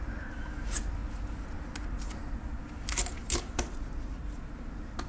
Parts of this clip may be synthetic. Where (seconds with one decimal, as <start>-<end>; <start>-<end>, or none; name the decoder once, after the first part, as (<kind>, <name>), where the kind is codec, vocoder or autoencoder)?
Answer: none